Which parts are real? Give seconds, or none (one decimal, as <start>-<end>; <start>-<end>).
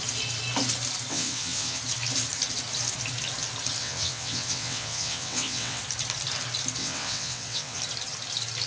0.0-1.1; 1.8-3.8; 5.8-6.8; 7.8-8.7